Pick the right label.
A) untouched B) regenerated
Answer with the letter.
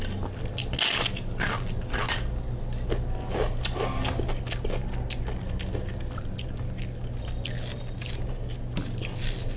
A